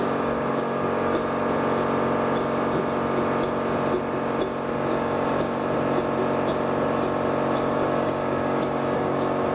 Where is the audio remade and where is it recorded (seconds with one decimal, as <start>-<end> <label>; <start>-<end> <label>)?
0.0-1.2 remade; 1.2-4.7 recorded; 4.7-5.6 remade; 5.6-7.6 recorded; 7.6-9.5 remade